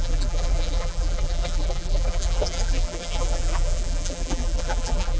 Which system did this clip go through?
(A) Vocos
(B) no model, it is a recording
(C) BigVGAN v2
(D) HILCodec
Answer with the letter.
C